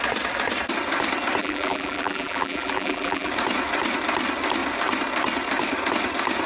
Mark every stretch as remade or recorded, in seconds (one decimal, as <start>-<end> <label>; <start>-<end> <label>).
0.0-1.4 recorded; 1.4-3.3 remade; 3.3-6.5 recorded